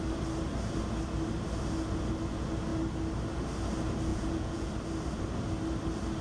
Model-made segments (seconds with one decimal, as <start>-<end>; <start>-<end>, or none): 4.1-4.7